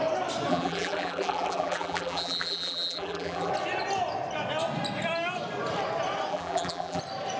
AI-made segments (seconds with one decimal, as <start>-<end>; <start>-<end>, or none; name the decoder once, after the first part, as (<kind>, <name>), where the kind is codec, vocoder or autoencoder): 0.5-3.5 (vocoder, BigVGAN v2); 6.3-7.0